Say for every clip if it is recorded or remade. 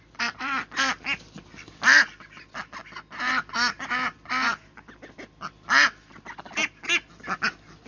recorded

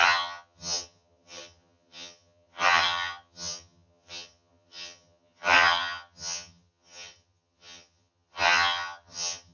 remade